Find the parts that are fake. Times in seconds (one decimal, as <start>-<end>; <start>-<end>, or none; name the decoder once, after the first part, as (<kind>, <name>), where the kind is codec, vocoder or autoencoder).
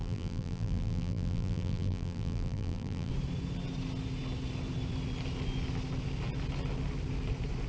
0.0-3.1 (vocoder, BigVGAN v2)